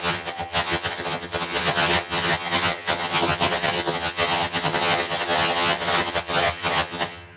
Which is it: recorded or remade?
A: remade